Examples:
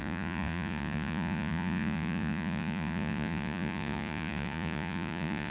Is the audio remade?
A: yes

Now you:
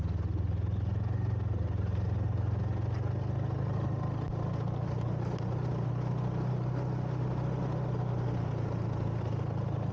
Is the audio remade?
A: no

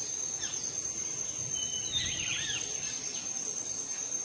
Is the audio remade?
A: no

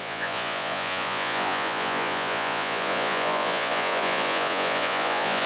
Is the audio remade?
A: yes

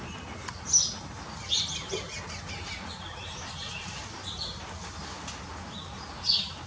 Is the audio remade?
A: no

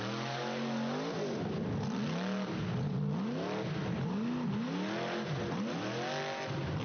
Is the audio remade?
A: no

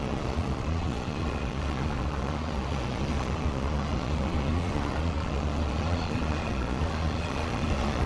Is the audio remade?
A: yes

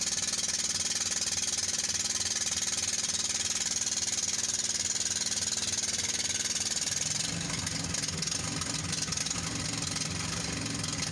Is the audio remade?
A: no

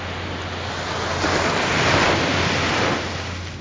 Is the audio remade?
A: no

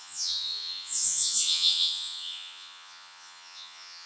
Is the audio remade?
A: yes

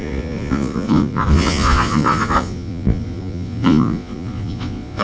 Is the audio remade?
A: yes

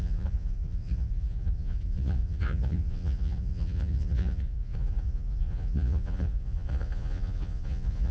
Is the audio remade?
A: yes